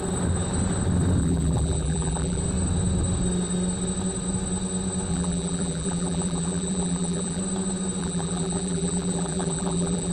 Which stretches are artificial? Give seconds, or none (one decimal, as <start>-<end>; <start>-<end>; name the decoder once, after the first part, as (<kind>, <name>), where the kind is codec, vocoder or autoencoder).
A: 1.2-2.4 (vocoder, BigVGAN v2); 5.1-7.4; 8.0-10.1